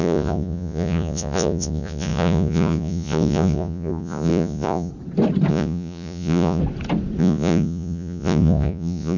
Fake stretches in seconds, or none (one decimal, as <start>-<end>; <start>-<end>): 0.0-4.9; 5.5-6.6; 7.2-9.2